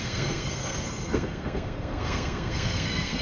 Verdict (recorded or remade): remade